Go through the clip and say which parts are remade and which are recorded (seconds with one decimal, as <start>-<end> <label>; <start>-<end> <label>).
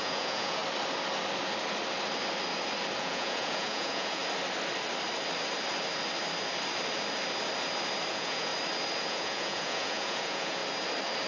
0.0-0.6 remade; 0.6-3.0 recorded; 3.0-4.2 remade; 4.2-8.1 recorded; 8.1-8.5 remade; 8.5-9.0 recorded; 9.0-10.6 remade; 10.6-11.3 recorded